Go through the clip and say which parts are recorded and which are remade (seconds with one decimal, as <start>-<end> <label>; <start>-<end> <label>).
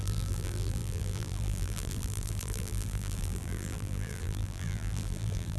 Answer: 0.0-5.6 remade